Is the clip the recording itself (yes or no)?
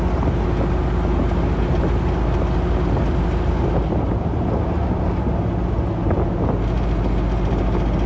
yes